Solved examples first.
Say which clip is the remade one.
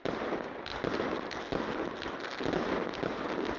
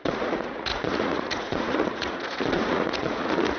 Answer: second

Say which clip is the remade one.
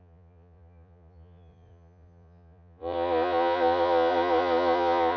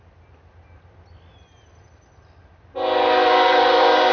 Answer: first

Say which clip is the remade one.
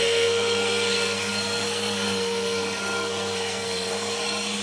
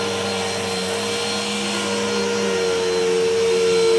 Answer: first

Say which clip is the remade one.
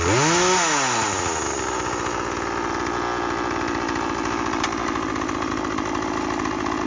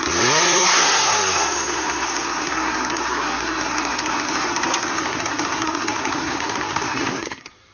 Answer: second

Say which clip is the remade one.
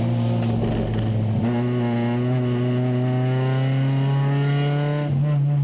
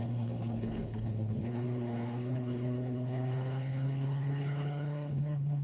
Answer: second